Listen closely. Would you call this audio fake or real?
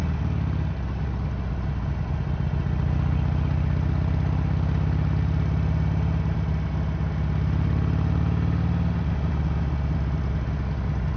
real